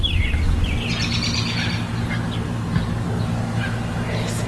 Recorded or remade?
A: recorded